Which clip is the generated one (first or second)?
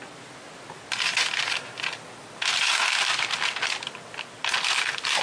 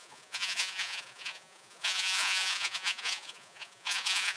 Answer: second